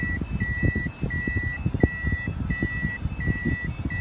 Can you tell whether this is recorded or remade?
recorded